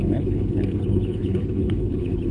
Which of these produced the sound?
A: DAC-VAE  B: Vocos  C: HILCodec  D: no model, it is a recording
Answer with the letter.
C